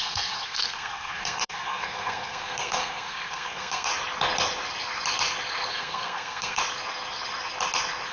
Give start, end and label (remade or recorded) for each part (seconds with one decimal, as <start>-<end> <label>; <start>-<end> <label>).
0.0-3.9 remade; 3.9-5.7 recorded; 5.7-6.6 remade; 6.6-8.1 recorded